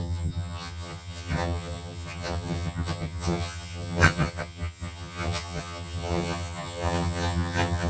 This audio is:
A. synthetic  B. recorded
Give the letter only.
A